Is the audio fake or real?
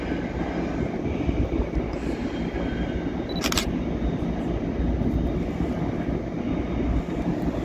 real